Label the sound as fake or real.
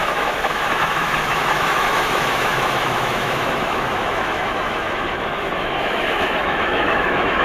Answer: fake